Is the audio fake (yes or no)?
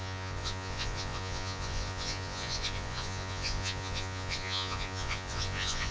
yes